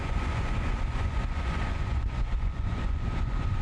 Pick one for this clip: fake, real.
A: fake